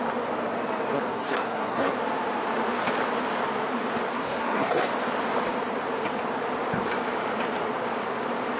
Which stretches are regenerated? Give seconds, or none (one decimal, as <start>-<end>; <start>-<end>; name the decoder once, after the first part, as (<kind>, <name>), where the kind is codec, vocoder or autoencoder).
1.1-1.9 (codec, SNAC); 4.1-4.9